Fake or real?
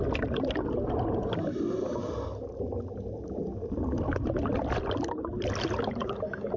real